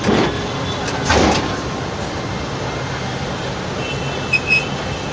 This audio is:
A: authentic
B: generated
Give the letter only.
A